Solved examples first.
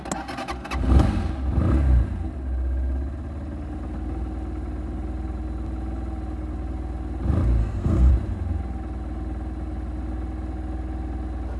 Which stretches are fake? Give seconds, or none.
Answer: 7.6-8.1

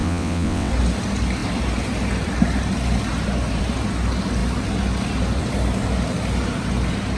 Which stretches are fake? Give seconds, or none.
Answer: 0.0-0.7

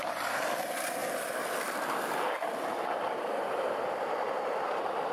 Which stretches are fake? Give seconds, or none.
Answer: 0.0-1.0; 2.8-5.1

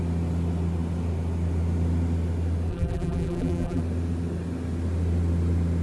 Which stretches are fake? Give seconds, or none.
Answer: 2.7-3.8